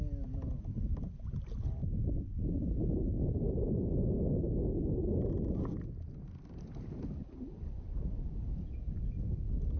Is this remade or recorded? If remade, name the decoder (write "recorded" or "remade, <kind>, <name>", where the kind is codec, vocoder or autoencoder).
recorded